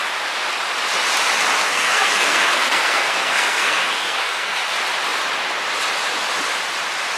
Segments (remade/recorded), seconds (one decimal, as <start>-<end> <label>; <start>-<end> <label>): 0.0-1.6 recorded; 1.6-4.6 remade; 4.6-7.2 recorded